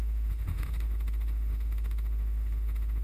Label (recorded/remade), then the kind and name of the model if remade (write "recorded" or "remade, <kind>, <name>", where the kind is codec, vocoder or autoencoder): remade, autoencoder, DAC-VAE